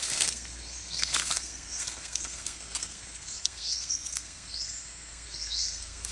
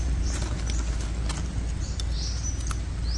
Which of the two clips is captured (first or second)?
second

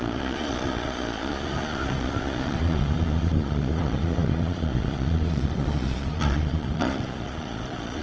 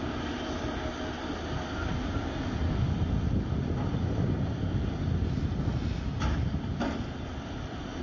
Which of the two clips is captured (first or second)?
second